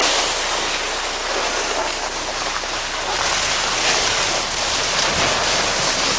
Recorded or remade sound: recorded